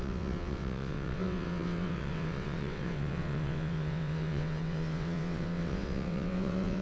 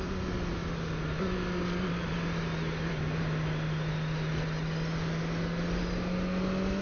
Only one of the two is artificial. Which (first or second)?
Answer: first